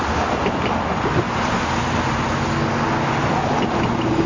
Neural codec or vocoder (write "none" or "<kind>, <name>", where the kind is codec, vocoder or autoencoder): none